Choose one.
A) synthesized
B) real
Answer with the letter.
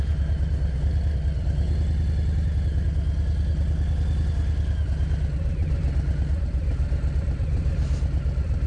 B